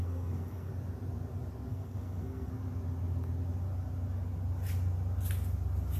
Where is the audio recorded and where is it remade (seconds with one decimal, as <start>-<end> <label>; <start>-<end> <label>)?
0.0-0.7 remade; 0.7-1.7 recorded; 1.7-2.5 remade; 2.5-6.0 recorded